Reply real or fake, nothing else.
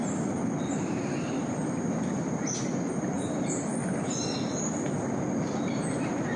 real